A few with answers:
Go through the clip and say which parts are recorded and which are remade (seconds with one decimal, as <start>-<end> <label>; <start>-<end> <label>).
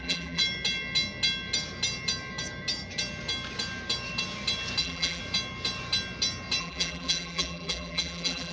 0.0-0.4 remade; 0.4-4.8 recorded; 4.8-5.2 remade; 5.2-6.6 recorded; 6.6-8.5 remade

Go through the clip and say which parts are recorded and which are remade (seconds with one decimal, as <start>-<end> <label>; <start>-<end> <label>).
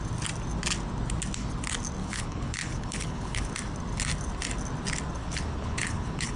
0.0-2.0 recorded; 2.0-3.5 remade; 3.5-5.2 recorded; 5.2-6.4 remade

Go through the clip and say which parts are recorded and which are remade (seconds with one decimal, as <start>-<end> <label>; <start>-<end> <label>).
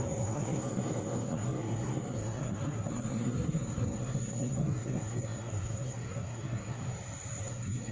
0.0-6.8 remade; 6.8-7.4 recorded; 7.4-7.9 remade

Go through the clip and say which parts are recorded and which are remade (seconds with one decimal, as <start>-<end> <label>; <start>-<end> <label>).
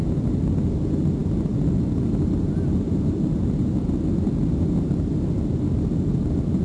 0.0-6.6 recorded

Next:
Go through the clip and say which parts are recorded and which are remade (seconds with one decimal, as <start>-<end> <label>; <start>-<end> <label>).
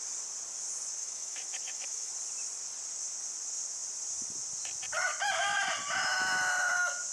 0.0-1.0 recorded; 1.0-2.1 remade; 2.1-7.1 recorded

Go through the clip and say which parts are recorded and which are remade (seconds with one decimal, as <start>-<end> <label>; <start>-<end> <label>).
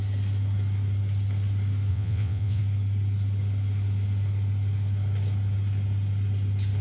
0.0-1.9 recorded; 1.9-2.6 remade; 2.6-6.8 recorded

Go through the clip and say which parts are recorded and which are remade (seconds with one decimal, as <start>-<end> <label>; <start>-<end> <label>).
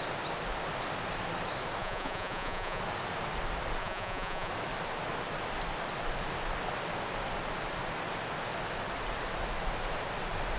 0.0-1.8 recorded; 1.8-2.8 remade; 2.8-3.8 recorded; 3.8-4.5 remade; 4.5-10.6 recorded